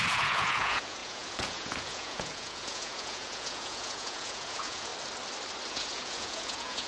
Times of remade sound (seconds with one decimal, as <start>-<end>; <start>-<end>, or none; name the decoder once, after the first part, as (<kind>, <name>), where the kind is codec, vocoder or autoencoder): 0.0-4.9 (vocoder, Vocos); 5.7-6.9